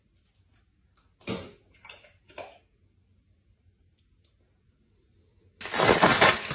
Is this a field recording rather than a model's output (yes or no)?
yes